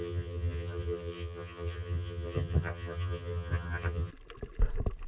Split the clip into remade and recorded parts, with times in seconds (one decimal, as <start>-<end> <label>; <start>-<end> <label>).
0.0-4.1 remade; 4.1-5.1 recorded